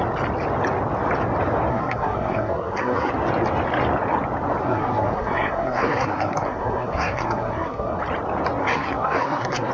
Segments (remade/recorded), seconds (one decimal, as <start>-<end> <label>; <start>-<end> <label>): 0.0-1.7 recorded; 1.7-3.1 remade; 3.1-4.6 recorded; 4.6-8.0 remade; 8.0-8.6 recorded; 8.6-9.7 remade